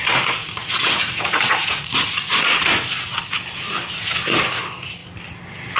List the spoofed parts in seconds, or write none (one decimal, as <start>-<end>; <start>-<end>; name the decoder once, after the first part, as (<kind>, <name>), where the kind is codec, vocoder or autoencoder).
0.4-2.7 (vocoder, Vocos)